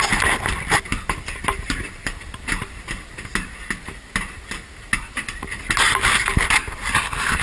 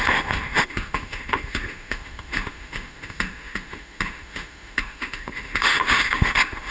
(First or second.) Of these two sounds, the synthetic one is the second